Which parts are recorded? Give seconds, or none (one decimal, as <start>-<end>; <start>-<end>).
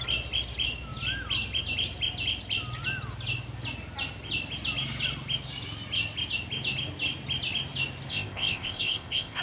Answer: 0.0-8.1